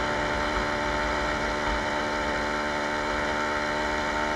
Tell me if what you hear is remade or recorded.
recorded